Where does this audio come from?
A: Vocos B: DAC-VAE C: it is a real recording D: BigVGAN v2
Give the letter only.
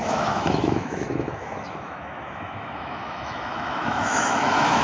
B